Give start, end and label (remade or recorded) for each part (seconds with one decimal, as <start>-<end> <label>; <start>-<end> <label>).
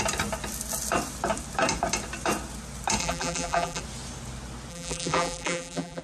0.0-3.0 recorded; 3.0-3.8 remade; 3.8-4.7 recorded; 4.7-6.0 remade